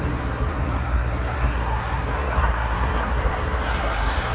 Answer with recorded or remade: remade